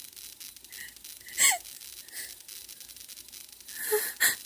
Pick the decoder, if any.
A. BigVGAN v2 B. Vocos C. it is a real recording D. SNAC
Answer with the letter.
C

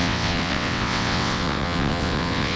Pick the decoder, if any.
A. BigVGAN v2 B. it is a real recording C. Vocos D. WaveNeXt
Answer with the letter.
D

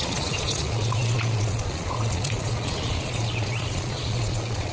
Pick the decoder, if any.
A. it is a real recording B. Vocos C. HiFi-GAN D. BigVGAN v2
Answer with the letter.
B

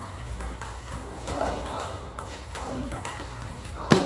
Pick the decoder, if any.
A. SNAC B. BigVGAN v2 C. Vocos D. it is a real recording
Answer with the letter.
A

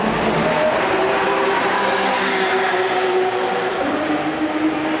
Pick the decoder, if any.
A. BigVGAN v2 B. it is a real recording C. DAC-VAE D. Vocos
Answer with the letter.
A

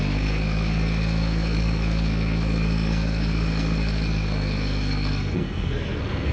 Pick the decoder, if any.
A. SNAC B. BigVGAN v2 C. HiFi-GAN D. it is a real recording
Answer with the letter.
A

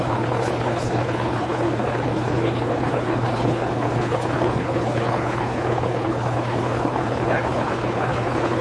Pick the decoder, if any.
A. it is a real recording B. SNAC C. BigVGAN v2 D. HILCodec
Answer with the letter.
D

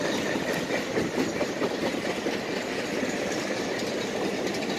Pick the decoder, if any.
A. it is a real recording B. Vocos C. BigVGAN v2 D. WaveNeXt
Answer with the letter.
C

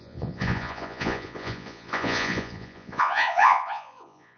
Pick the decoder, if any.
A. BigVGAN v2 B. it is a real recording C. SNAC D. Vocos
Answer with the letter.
D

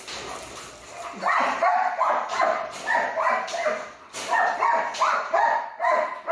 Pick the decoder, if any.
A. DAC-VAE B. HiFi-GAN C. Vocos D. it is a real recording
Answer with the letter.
D